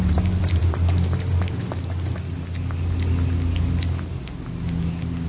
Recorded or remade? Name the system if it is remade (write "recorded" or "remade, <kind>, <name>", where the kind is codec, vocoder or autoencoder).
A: recorded